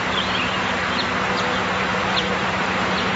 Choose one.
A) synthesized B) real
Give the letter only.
B